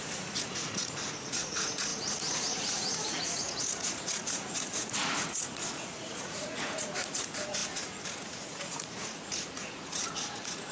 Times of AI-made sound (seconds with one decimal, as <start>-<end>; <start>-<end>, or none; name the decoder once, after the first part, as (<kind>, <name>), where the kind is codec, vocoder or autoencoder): 0.0-10.7 (vocoder, Vocos)